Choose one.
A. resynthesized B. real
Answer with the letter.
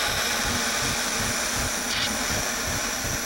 B